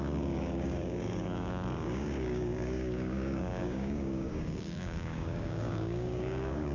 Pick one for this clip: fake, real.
fake